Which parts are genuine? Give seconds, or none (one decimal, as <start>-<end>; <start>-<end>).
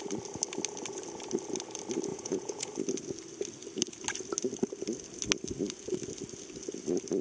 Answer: 0.0-2.1; 2.7-7.2